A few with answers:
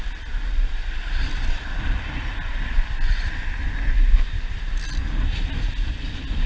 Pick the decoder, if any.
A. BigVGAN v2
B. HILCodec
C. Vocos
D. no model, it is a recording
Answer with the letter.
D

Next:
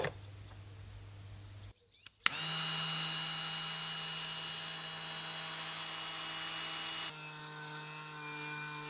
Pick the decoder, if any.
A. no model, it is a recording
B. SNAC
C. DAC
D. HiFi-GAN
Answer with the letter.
A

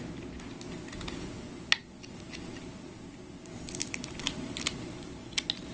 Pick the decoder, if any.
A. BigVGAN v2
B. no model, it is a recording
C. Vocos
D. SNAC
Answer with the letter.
B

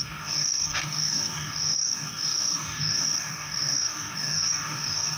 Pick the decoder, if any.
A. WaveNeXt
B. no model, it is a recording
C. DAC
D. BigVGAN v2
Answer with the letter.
C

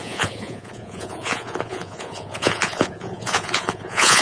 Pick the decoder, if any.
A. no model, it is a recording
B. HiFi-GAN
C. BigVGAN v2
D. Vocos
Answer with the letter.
D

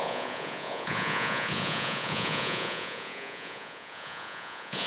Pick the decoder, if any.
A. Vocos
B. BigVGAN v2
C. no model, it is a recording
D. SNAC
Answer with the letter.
A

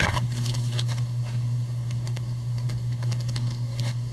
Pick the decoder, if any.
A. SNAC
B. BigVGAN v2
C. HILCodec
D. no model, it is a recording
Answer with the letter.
A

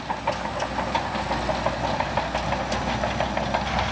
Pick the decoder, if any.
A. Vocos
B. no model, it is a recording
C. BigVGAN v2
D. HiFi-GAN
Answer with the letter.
B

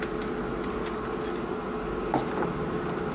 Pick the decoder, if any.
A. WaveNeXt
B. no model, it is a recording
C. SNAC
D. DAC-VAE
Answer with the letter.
B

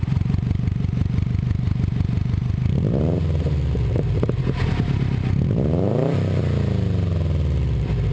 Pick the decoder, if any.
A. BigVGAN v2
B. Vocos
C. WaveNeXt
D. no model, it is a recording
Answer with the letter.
D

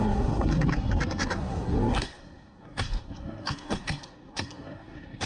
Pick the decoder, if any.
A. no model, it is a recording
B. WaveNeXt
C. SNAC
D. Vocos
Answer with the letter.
C